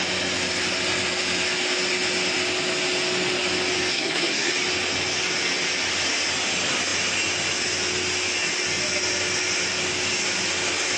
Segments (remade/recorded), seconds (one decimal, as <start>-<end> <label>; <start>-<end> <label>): 0.0-3.9 recorded; 3.9-4.5 remade; 4.5-11.0 recorded